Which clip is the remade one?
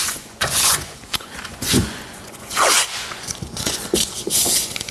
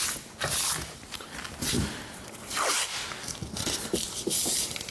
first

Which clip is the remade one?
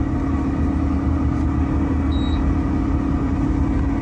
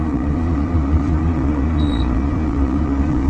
second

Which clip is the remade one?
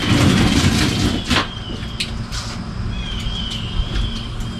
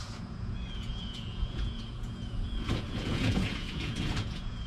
second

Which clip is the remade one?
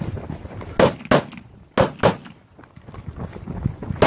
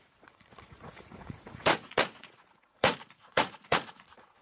second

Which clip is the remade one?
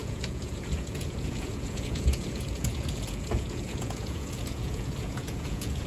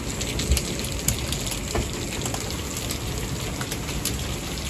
first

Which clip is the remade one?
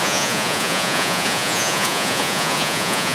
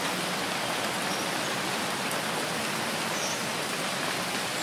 first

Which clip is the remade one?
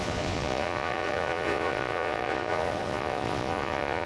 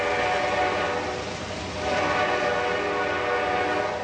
first